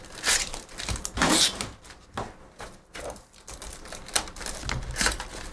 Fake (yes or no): no